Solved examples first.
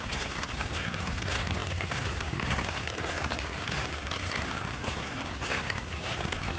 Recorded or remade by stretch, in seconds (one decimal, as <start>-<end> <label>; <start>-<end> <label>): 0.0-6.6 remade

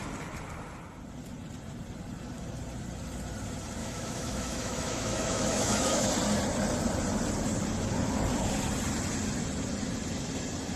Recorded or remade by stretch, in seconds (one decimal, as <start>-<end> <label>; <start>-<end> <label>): 0.0-3.8 recorded; 3.8-6.1 remade; 6.1-10.8 recorded

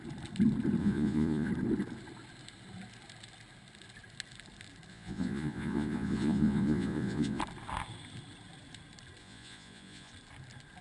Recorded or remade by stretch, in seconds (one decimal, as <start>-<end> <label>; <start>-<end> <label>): 0.0-0.8 recorded; 0.8-1.5 remade; 1.5-4.9 recorded; 4.9-7.4 remade; 7.4-9.2 recorded; 9.2-10.1 remade; 10.1-10.8 recorded

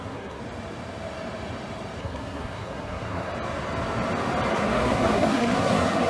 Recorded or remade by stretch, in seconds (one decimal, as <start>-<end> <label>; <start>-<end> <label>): 0.0-0.4 remade; 0.4-2.0 recorded; 2.0-3.3 remade; 3.3-4.5 recorded; 4.5-6.1 remade

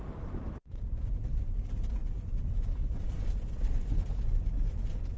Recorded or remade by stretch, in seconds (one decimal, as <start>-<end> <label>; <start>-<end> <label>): 0.0-5.2 recorded